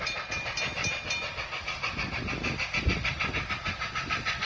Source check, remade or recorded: recorded